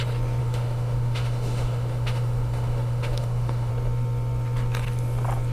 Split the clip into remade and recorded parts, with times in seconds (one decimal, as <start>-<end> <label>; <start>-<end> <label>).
0.0-0.4 recorded; 0.4-3.7 remade; 3.7-5.5 recorded